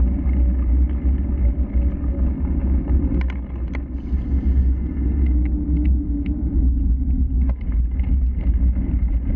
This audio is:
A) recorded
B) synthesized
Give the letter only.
A